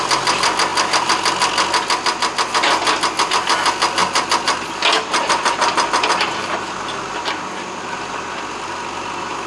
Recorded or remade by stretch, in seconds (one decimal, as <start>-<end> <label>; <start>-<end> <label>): 0.0-9.5 recorded